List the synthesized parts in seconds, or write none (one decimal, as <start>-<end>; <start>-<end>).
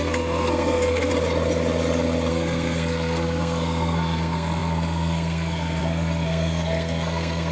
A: 0.0-1.1; 2.3-7.5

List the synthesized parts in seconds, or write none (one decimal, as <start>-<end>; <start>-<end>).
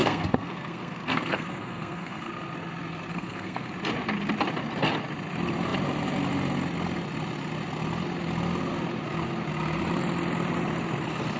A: 0.0-2.3; 3.1-3.7